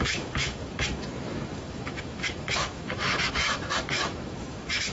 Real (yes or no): no